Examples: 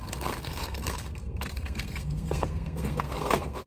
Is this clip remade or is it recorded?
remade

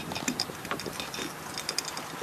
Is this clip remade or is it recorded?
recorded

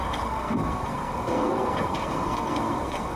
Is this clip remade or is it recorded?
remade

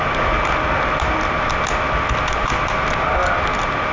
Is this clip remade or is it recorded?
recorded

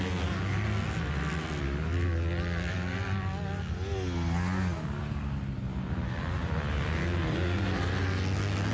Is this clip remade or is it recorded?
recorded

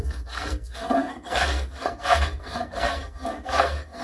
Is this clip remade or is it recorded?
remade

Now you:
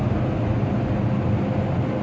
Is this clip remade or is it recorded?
recorded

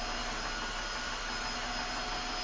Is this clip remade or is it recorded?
recorded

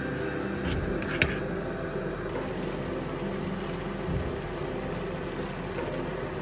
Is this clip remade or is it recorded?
recorded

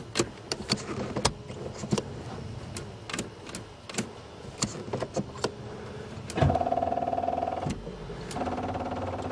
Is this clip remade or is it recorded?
recorded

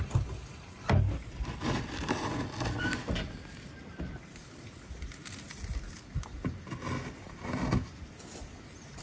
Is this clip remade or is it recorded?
recorded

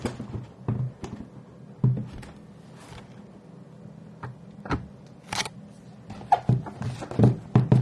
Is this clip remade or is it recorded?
recorded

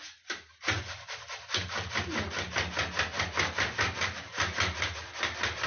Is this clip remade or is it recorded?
recorded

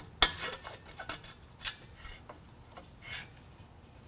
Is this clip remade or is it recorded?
recorded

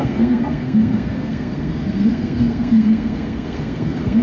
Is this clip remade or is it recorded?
remade